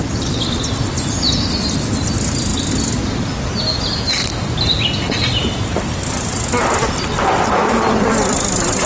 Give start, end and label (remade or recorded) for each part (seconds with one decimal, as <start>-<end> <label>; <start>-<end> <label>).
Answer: 0.0-8.9 recorded